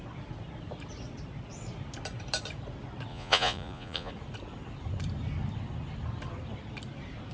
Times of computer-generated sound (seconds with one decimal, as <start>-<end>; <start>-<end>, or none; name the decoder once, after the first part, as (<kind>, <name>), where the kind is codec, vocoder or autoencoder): 3.1-4.1 (vocoder, Vocos)